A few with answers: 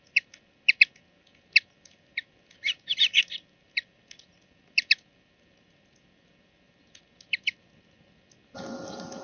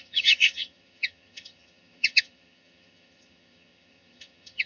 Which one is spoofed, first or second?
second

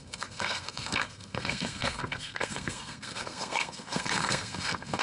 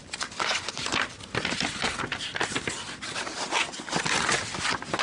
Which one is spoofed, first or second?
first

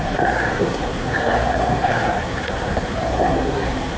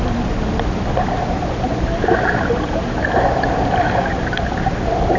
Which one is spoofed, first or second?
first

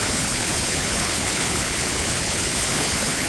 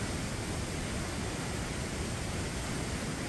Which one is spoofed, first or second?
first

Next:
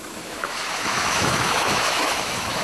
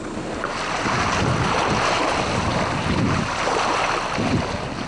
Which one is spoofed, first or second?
first